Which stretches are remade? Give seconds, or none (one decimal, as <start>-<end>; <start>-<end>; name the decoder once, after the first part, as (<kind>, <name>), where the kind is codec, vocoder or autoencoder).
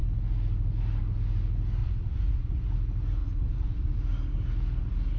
1.8-2.7 (vocoder, Vocos); 3.2-3.9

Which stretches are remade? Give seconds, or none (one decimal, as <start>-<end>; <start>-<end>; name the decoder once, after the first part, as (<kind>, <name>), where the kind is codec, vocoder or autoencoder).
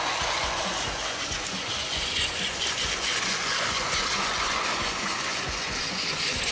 0.0-6.5 (vocoder, Vocos)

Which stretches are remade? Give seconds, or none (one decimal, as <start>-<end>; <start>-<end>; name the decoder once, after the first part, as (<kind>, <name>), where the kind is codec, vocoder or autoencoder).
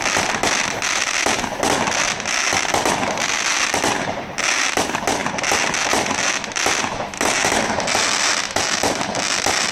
none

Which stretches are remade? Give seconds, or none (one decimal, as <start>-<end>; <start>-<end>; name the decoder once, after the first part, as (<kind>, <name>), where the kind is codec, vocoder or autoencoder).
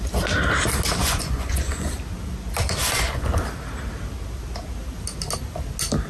1.0-1.9 (vocoder, Vocos); 2.8-3.4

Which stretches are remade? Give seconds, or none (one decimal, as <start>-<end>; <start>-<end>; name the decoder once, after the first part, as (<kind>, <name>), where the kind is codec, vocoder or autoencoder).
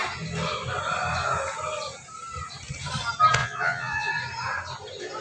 3.4-4.1 (vocoder, Vocos)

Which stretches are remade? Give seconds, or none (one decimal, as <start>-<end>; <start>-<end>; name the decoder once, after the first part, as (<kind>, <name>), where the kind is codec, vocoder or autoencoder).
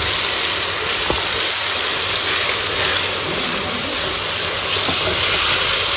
none